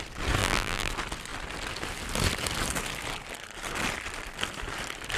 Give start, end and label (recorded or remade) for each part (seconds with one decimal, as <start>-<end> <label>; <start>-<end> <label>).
0.0-0.4 recorded; 0.4-0.9 remade; 0.9-5.2 recorded

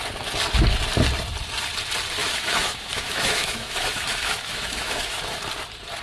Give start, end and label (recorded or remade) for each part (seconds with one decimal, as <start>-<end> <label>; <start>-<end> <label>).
0.0-2.2 recorded; 2.2-5.4 remade; 5.4-6.0 recorded

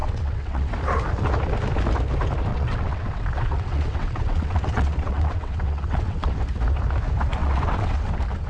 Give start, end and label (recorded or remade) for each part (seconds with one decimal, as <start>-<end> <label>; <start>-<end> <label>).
0.0-0.7 remade; 0.7-2.5 recorded; 2.5-6.3 remade; 6.3-7.4 recorded; 7.4-8.1 remade; 8.1-8.5 recorded

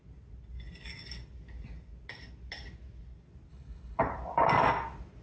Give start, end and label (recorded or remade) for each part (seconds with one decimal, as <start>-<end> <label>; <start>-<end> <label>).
0.0-3.5 recorded; 3.5-4.0 remade; 4.0-5.2 recorded

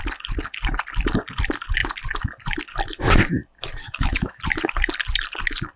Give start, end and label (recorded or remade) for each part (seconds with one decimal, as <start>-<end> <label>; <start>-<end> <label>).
0.0-3.8 recorded; 3.8-4.4 remade; 4.4-5.8 recorded

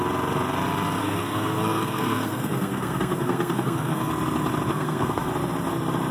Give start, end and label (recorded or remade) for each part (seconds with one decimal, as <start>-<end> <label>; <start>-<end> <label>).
0.0-1.0 recorded; 1.0-4.1 remade; 4.1-4.7 recorded; 4.7-5.3 remade; 5.3-6.1 recorded

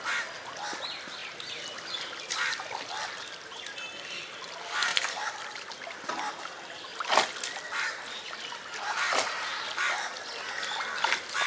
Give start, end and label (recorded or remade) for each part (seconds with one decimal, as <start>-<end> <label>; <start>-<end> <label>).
0.0-1.2 recorded; 1.2-2.2 remade; 2.2-4.9 recorded; 4.9-8.3 remade; 8.3-11.5 recorded

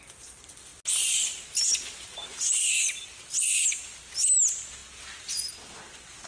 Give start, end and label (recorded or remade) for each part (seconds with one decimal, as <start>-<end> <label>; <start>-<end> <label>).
0.0-6.3 recorded